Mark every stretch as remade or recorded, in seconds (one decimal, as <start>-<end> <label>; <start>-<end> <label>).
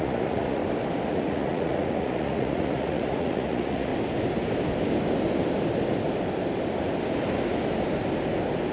0.0-0.6 remade; 0.6-1.1 recorded; 1.1-3.9 remade; 3.9-8.7 recorded